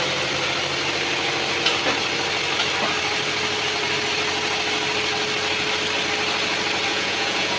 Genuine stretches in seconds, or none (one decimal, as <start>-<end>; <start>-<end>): 0.0-6.9